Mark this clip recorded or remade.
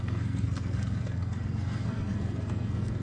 remade